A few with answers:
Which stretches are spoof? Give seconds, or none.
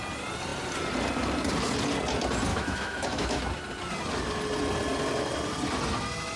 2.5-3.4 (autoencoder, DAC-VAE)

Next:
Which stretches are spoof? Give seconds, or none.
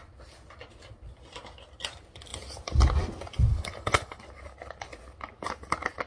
3.5-4.2 (codec, HILCodec)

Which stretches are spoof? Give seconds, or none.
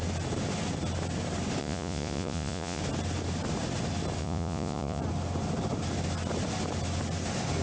1.6-2.8 (vocoder, Vocos); 4.2-5.0